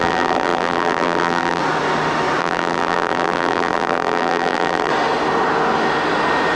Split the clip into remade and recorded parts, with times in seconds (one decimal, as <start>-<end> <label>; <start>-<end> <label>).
0.0-1.6 remade; 1.6-2.4 recorded; 2.4-4.9 remade; 4.9-6.6 recorded